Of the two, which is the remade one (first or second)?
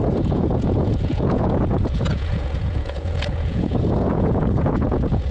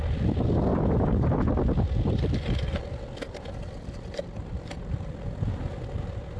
first